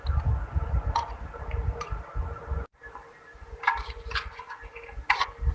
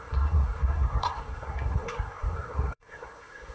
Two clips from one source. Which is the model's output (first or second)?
second